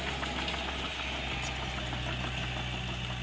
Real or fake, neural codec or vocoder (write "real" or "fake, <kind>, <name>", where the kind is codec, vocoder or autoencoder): real